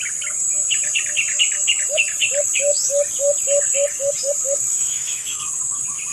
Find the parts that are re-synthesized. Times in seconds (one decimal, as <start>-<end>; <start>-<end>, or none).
4.7-5.4